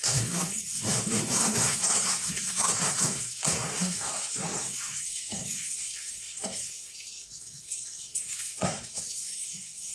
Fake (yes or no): yes